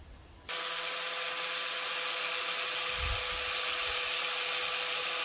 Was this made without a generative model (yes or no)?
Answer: yes